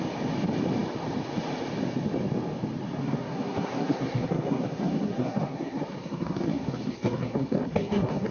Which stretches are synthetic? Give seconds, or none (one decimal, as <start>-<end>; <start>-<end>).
3.0-8.3